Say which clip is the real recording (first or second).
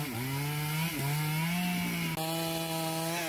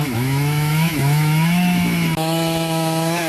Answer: first